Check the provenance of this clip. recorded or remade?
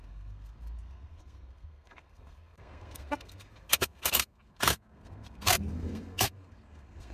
remade